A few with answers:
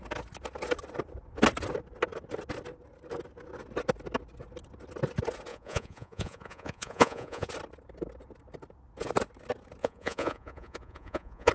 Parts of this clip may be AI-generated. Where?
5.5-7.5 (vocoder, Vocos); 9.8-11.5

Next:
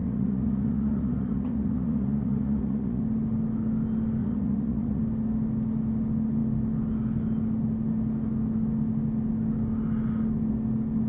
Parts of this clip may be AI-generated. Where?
0.0-3.0 (vocoder, Vocos); 4.2-5.0

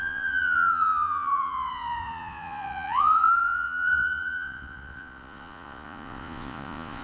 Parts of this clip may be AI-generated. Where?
0.0-7.0 (vocoder, Vocos)

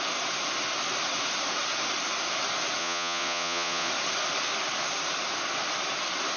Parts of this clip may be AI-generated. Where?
2.8-3.9 (vocoder, Vocos)

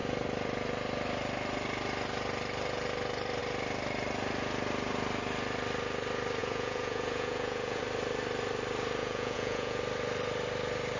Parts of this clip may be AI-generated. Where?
6.4-7.8 (vocoder, Vocos); 9.0-9.8

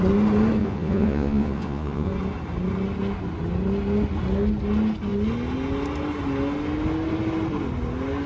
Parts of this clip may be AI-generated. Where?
0.6-2.1 (vocoder, Vocos)

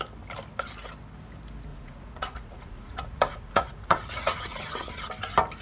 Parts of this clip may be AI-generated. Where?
1.7-5.1 (vocoder, Vocos)

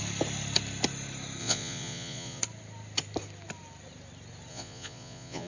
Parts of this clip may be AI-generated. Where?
1.4-2.4 (vocoder, Vocos); 4.5-5.5